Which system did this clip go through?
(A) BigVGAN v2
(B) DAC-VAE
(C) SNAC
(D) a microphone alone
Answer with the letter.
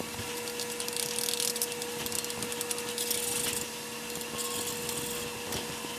D